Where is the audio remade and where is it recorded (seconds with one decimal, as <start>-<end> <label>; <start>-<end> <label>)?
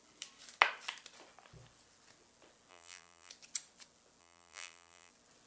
0.0-2.7 recorded; 2.7-3.3 remade; 3.3-4.2 recorded; 4.2-5.1 remade; 5.1-5.5 recorded